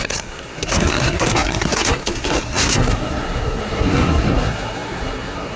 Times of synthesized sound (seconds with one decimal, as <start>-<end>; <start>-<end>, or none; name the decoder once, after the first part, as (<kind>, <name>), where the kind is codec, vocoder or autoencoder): 0.0-5.6 (codec, SNAC)